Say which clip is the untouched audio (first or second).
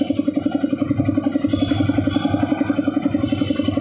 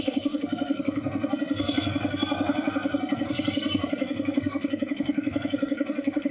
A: first